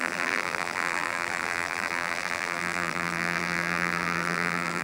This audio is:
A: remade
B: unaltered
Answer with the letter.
A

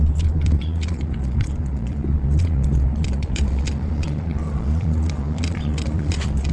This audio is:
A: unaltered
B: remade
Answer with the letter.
B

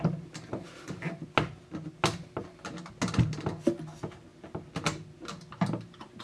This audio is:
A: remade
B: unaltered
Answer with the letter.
B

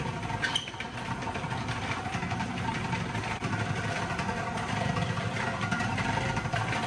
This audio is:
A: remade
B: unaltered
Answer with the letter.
A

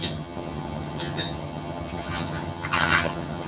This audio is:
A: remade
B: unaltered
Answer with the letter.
A